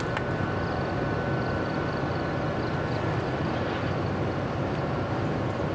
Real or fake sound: real